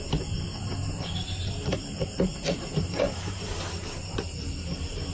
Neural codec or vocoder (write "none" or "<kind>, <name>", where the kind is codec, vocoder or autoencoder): vocoder, BigVGAN v2